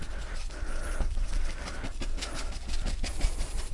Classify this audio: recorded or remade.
remade